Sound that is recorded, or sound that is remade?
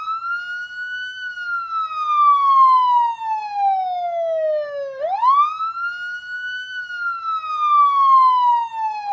recorded